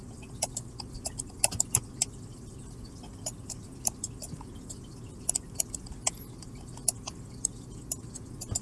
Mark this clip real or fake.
fake